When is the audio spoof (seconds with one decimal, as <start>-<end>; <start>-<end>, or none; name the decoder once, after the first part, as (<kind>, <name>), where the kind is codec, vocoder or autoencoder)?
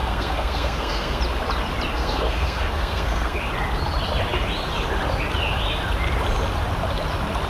0.0-1.2 (codec, SNAC); 1.9-3.4